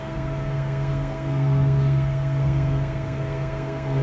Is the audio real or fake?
fake